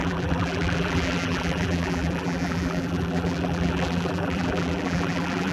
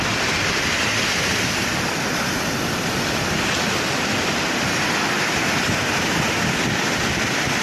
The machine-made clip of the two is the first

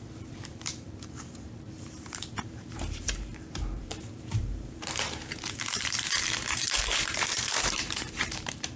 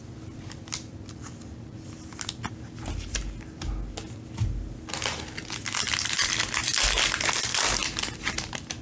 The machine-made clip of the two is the first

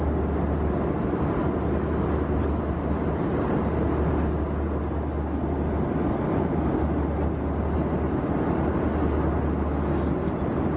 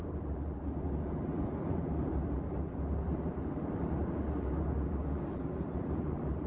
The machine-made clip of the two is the second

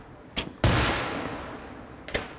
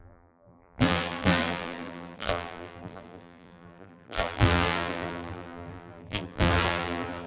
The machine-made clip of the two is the second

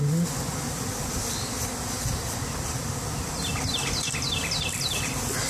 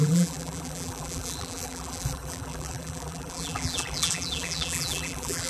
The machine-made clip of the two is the second